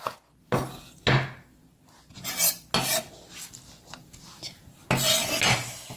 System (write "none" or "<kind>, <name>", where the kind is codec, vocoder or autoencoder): none